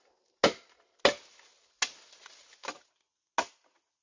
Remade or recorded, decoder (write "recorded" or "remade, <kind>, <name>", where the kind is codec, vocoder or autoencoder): recorded